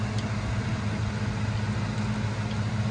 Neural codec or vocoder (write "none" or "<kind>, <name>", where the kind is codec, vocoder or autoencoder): none